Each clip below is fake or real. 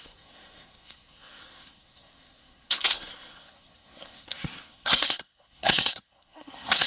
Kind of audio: fake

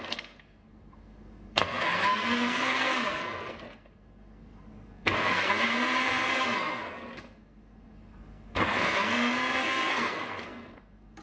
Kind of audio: fake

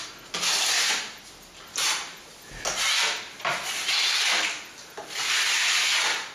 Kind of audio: real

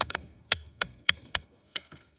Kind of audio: fake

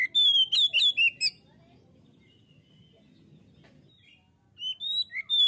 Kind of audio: real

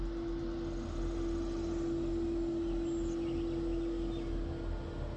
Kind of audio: real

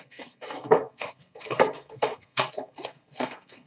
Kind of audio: fake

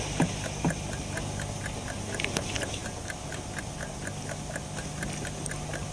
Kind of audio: real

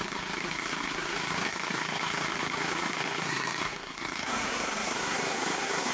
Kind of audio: fake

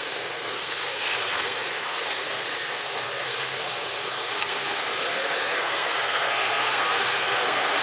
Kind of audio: fake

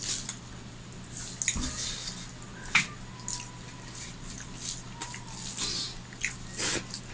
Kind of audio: real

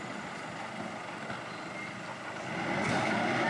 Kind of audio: real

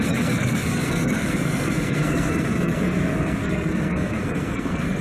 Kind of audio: fake